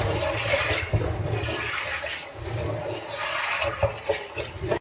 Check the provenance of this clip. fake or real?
real